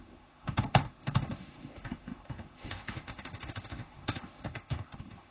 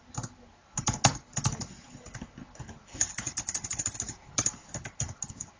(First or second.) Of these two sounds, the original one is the second